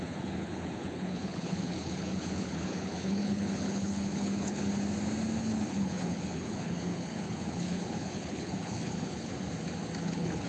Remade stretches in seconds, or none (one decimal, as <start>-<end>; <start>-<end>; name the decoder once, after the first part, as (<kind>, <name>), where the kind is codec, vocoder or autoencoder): 0.0-4.7 (codec, HILCodec); 5.4-9.3; 10.0-10.5